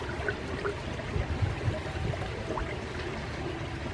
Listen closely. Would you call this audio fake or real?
real